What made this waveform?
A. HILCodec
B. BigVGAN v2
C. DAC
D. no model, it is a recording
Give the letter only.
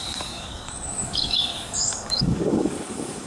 C